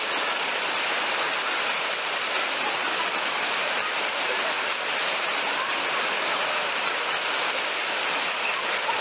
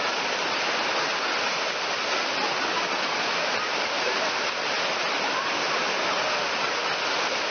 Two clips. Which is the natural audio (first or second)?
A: second